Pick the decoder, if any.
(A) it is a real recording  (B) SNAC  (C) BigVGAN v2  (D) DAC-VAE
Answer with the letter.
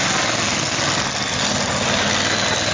A